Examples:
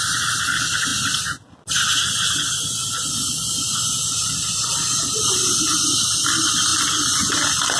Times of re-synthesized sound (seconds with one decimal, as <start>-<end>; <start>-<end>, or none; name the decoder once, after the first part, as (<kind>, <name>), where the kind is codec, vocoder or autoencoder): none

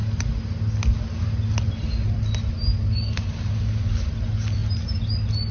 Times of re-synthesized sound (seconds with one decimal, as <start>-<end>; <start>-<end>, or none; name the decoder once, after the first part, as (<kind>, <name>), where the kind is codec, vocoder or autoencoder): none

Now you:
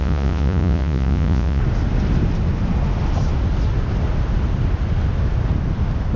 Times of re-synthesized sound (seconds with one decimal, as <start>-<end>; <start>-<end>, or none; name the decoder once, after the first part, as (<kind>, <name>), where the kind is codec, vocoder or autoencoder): 0.0-1.6 (vocoder, Vocos)

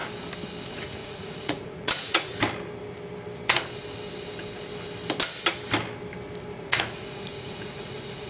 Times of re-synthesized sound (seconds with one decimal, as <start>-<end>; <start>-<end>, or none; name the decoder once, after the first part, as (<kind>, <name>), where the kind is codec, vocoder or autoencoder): 0.7-2.3 (vocoder, Vocos); 6.5-8.3

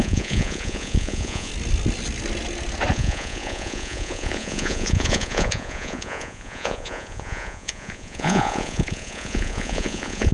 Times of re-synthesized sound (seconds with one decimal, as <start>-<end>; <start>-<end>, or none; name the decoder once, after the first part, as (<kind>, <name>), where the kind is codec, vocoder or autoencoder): 0.0-1.5 (vocoder, Vocos); 2.9-10.3